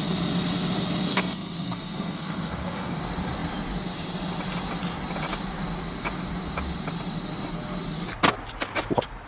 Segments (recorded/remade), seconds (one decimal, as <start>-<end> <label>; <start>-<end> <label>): 0.0-1.1 recorded; 1.1-3.0 remade; 3.0-9.3 recorded